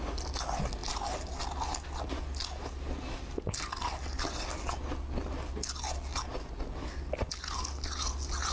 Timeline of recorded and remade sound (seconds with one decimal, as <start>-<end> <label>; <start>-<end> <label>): 0.0-8.5 recorded